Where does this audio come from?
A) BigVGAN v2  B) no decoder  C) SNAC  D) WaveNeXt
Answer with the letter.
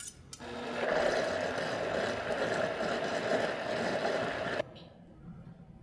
B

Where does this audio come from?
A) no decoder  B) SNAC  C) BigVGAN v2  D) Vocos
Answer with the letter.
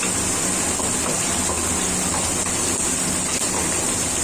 A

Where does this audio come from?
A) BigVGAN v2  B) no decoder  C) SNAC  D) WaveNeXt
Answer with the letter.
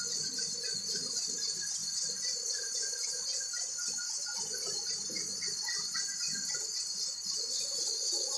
B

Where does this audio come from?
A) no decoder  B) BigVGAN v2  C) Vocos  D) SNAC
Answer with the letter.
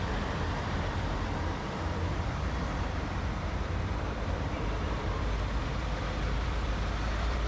B